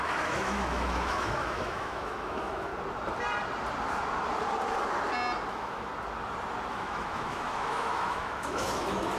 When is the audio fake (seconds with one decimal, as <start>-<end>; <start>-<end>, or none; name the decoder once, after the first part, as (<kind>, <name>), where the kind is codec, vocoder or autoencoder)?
0.0-2.7 (autoencoder, DAC-VAE); 5.5-5.9; 6.7-9.2